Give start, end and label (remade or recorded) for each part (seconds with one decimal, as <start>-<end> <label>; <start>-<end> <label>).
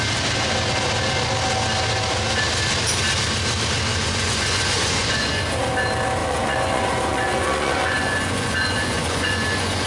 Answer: 0.0-3.9 recorded; 3.9-5.4 remade; 5.4-6.2 recorded; 6.2-9.9 remade